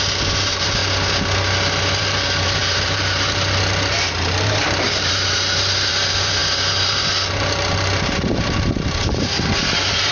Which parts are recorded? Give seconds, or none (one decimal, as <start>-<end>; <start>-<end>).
0.8-2.0